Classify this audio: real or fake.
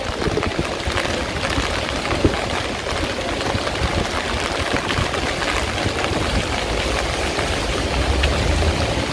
real